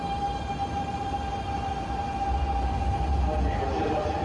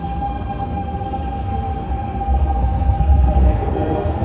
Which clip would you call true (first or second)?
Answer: first